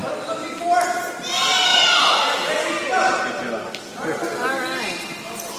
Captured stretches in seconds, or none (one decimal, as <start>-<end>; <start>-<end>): 0.0-1.7; 3.2-5.6